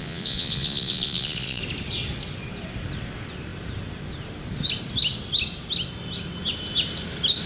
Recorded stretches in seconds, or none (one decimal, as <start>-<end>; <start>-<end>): 1.6-7.5